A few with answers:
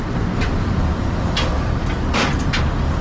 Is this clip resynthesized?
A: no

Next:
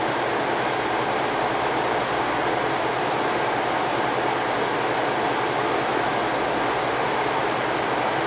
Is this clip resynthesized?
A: no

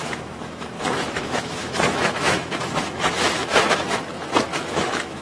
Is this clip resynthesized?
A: yes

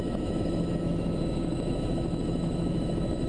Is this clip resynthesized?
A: yes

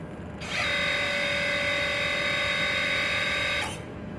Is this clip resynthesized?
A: no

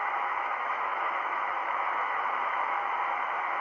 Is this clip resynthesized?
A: yes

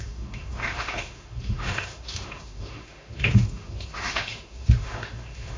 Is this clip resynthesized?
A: yes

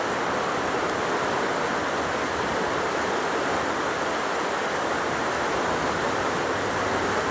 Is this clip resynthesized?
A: no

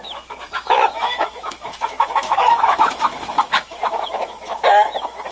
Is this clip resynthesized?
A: yes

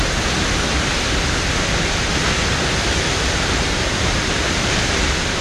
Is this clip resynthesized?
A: no